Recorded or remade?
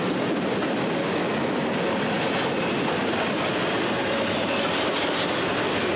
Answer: recorded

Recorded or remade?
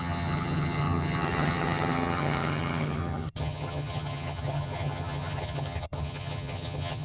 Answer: remade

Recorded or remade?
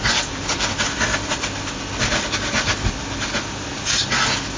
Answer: recorded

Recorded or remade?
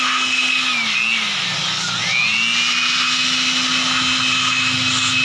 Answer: recorded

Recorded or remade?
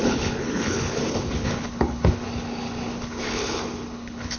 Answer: remade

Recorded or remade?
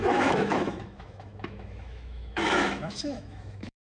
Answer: remade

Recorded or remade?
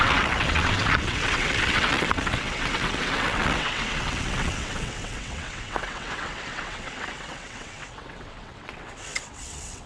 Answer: remade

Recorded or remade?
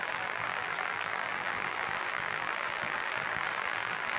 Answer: remade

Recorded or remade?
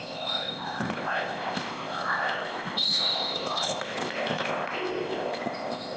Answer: remade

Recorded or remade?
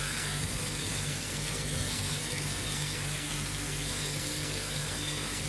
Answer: remade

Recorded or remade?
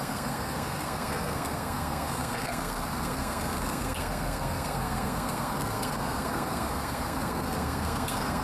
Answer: remade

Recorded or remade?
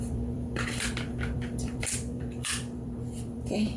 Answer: remade